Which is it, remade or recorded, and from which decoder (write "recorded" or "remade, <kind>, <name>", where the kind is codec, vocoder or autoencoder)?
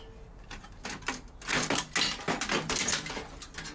recorded